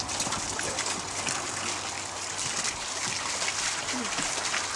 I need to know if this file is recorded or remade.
recorded